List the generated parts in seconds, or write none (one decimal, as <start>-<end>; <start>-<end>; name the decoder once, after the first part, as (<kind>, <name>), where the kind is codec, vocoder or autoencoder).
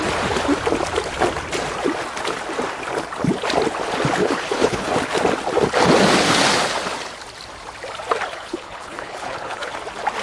4.2-4.9 (codec, HILCodec); 8.3-9.7